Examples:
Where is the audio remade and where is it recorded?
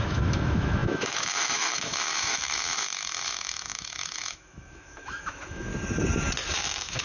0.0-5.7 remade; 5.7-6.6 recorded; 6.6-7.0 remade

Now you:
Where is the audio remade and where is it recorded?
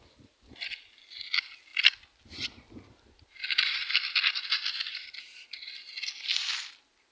0.0-7.1 recorded